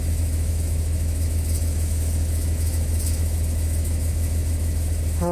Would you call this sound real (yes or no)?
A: no